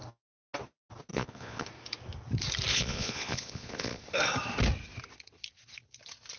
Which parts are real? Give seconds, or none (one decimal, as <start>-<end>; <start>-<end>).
0.0-1.1; 1.7-2.7; 4.0-6.4